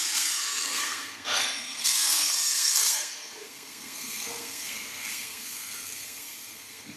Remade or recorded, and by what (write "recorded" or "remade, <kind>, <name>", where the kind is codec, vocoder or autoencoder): remade, codec, SNAC